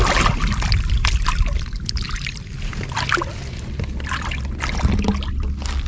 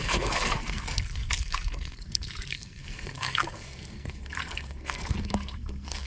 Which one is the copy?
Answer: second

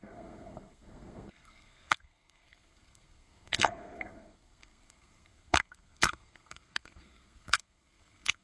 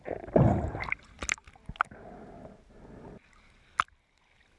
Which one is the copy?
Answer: first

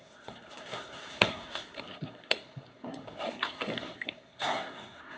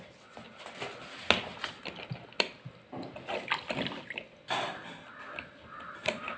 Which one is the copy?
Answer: first